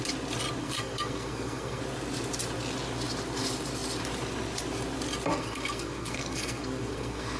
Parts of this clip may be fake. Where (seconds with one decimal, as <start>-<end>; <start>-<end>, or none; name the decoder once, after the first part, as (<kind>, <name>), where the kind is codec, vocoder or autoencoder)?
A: 0.6-1.8 (codec, SNAC); 5.3-7.4